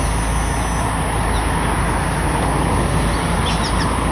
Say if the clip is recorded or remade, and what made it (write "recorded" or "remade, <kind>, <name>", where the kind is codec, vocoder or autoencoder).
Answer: recorded